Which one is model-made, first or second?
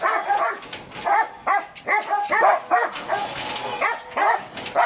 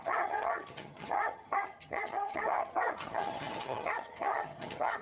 second